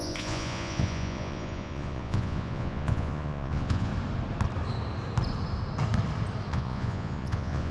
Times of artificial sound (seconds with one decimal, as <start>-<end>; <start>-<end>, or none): 0.0-3.9; 6.5-7.7